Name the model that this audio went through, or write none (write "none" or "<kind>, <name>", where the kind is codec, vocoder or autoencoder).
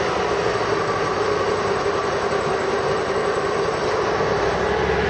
none